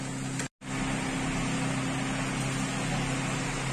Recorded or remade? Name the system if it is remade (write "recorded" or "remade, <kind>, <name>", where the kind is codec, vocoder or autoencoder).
recorded